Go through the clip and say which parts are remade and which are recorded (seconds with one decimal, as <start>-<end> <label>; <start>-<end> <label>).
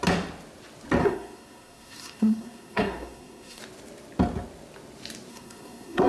0.0-1.0 recorded; 1.0-3.6 remade; 3.6-5.3 recorded; 5.3-6.1 remade